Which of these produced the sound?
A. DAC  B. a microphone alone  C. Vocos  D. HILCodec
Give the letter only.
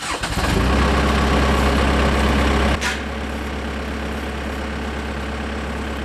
B